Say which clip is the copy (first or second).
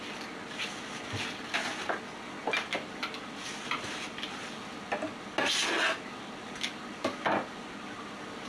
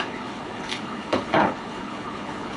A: second